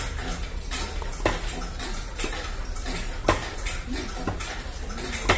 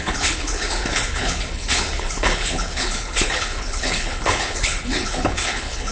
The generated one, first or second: second